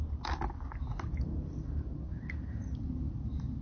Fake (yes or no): no